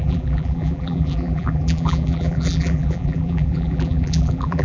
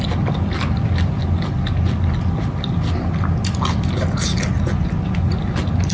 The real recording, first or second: second